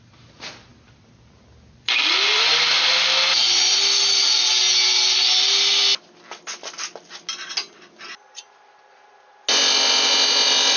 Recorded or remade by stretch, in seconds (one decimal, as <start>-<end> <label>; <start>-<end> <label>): 0.0-10.8 recorded